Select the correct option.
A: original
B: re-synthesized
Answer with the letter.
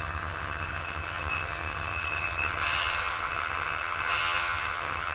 B